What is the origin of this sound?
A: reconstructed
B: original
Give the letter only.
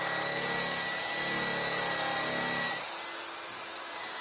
B